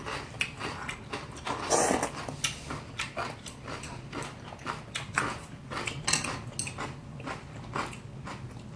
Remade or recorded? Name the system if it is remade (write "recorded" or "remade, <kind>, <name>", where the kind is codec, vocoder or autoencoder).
recorded